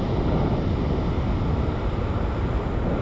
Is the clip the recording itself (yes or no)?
yes